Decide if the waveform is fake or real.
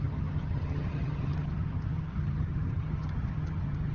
fake